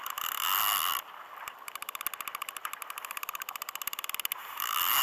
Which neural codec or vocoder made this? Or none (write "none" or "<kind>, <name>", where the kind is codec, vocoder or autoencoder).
none